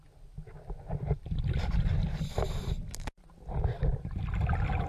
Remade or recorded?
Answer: recorded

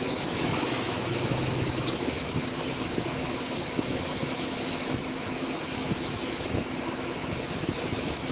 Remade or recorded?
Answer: remade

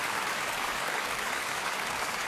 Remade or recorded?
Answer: remade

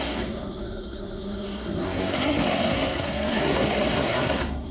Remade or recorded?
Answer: remade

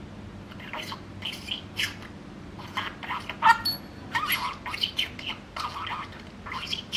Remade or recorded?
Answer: recorded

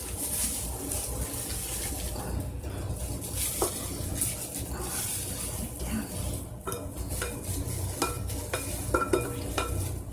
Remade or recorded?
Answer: recorded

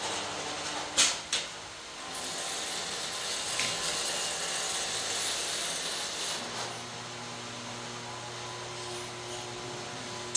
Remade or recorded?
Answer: recorded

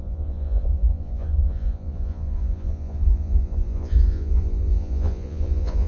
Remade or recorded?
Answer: remade